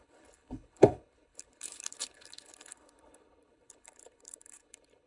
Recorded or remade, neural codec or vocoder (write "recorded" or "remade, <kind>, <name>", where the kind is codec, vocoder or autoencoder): remade, codec, HILCodec